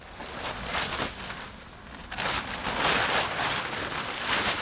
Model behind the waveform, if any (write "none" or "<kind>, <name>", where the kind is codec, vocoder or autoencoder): none